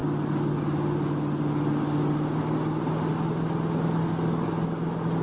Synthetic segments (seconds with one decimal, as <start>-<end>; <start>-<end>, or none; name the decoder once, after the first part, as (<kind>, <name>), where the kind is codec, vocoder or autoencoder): none